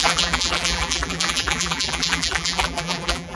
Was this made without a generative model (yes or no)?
no